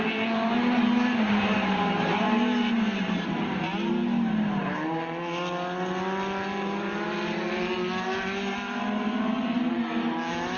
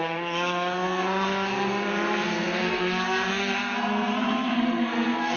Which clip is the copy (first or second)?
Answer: second